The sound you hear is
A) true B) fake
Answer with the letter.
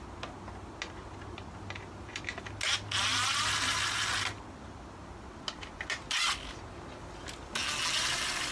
A